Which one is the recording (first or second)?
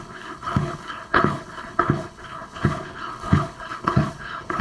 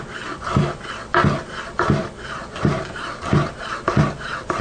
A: second